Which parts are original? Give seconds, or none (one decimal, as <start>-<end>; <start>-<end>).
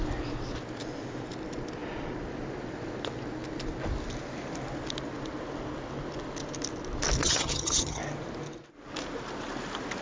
0.0-7.2; 8.0-10.0